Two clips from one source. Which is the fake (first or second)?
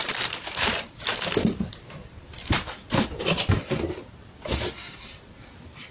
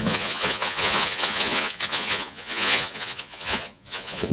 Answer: second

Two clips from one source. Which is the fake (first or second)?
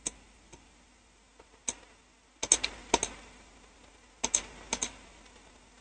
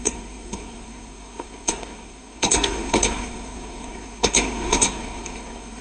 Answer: second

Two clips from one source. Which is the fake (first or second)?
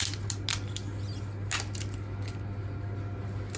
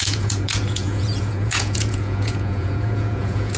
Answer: second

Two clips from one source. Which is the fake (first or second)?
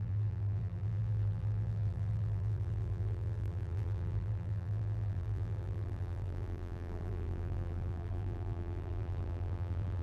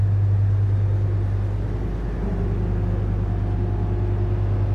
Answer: first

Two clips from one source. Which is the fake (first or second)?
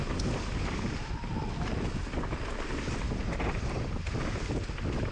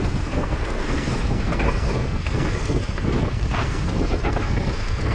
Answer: second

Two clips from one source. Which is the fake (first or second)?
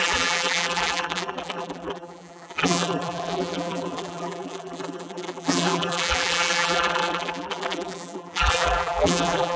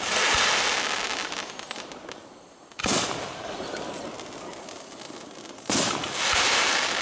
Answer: first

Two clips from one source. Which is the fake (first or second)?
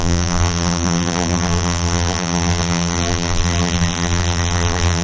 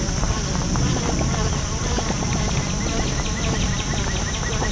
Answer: first